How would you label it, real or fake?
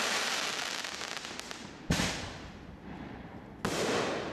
real